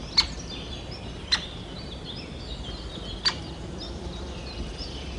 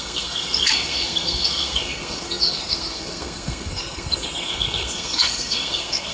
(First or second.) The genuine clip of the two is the first